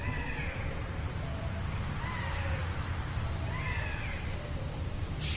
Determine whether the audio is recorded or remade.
recorded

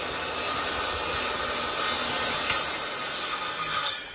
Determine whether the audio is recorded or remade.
recorded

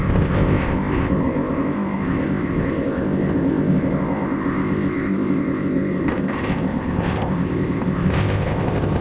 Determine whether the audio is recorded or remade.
remade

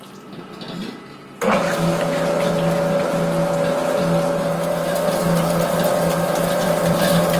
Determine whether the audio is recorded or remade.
recorded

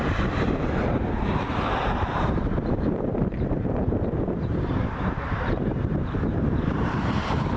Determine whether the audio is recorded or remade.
remade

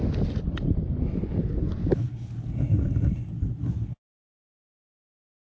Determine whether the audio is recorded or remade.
recorded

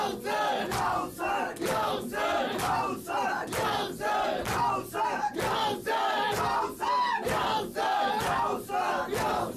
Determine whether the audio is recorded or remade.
recorded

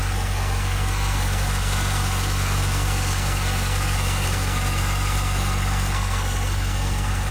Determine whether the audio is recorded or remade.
remade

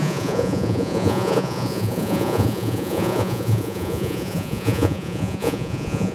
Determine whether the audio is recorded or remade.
remade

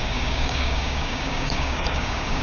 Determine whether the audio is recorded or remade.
remade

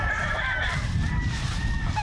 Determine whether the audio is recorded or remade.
remade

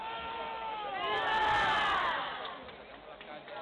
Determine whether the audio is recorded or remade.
recorded